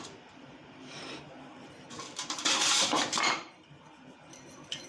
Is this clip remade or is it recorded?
remade